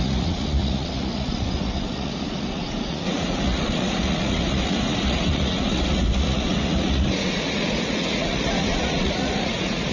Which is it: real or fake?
fake